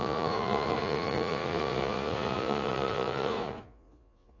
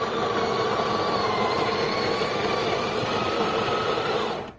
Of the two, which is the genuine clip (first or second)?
second